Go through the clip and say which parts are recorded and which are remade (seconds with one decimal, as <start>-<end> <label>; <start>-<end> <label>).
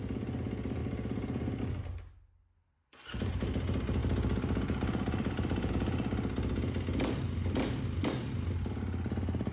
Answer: 0.0-0.8 recorded; 0.8-1.6 remade; 1.6-4.0 recorded; 4.0-5.7 remade; 5.7-9.5 recorded